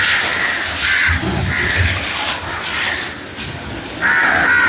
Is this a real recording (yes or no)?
yes